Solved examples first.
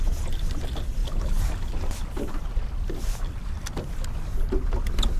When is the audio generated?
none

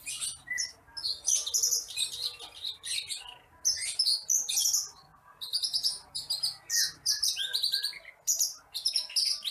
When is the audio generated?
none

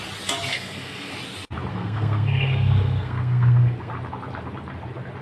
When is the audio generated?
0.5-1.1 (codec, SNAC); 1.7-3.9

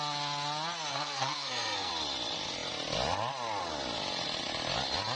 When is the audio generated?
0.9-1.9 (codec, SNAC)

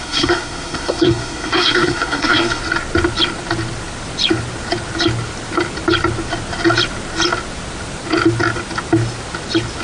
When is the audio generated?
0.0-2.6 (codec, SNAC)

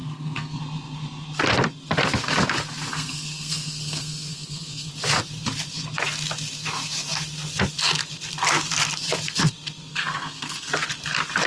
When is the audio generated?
0.0-0.6 (codec, SNAC); 2.9-4.9; 9.9-10.7

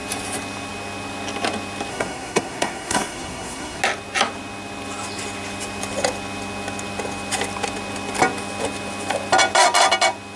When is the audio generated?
1.9-3.8 (codec, SNAC)

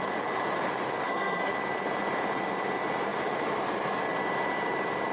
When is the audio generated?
1.0-1.5 (codec, SNAC)